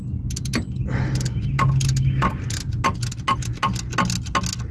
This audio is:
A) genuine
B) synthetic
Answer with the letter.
A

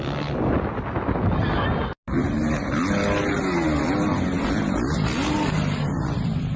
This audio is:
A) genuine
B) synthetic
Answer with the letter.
A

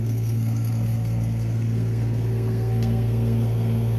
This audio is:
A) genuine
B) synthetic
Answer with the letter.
B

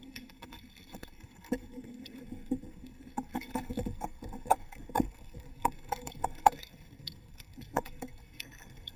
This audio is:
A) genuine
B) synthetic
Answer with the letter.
B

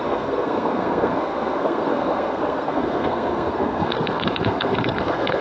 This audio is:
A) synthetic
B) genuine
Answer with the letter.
A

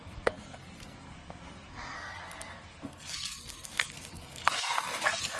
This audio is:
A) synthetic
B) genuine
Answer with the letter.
A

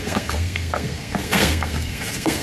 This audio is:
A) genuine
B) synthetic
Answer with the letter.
B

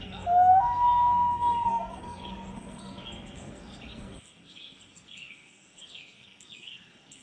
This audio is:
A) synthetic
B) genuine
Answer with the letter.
A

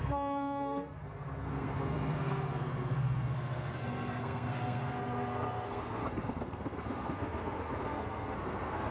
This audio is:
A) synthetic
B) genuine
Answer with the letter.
A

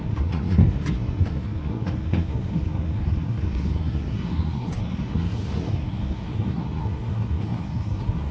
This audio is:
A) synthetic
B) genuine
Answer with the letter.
A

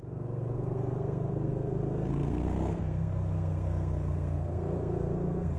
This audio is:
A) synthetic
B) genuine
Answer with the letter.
A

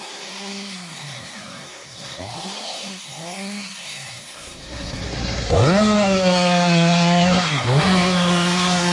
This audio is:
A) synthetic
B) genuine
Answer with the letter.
A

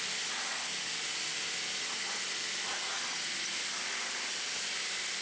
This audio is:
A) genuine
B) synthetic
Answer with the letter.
A